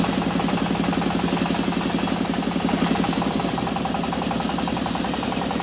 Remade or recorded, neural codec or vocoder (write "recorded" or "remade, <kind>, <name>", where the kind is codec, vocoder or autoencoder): recorded